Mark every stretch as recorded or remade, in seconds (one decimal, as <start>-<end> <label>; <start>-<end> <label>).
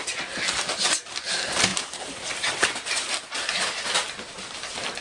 0.0-1.7 recorded; 1.7-3.8 remade; 3.8-5.0 recorded